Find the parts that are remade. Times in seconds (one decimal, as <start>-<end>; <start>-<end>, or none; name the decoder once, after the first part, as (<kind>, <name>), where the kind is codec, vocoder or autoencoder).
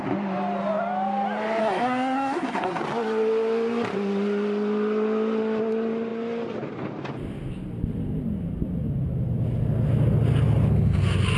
1.6-2.8 (codec, SNAC)